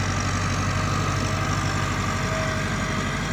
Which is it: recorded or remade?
recorded